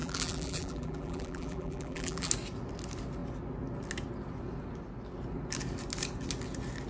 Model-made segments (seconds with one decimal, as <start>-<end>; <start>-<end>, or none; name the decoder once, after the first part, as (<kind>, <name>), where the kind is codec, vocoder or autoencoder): 0.0-2.3 (vocoder, BigVGAN v2)